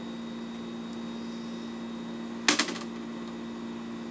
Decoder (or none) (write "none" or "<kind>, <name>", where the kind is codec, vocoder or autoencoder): none